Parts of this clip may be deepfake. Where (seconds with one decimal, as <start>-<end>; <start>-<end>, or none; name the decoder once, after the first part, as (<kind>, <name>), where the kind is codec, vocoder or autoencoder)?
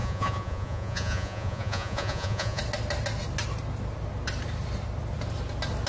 0.0-2.6 (vocoder, Vocos)